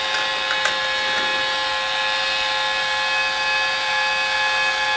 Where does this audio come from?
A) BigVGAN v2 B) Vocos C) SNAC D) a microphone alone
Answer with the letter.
D